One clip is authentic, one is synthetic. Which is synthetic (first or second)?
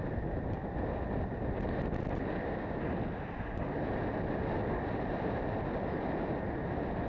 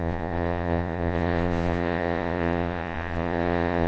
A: second